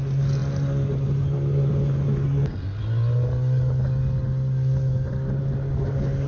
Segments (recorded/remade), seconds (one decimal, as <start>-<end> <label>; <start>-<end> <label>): 0.0-6.3 recorded